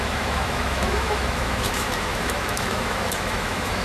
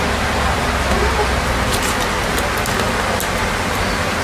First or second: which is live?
second